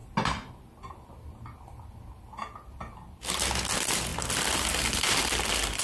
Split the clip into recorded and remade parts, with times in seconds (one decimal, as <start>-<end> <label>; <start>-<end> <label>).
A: 0.0-5.8 recorded